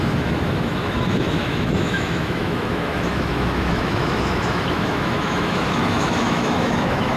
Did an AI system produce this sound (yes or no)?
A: yes